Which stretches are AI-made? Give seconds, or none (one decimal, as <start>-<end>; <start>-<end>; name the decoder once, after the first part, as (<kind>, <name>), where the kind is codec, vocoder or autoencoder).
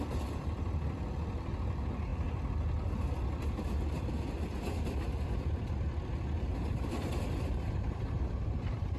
6.5-9.0 (vocoder, BigVGAN v2)